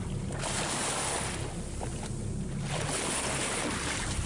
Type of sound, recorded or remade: recorded